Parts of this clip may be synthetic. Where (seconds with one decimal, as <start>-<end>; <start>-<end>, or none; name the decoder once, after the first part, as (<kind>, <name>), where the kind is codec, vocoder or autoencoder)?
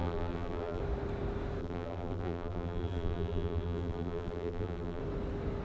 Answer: 0.0-0.8 (vocoder, BigVGAN v2); 1.6-5.0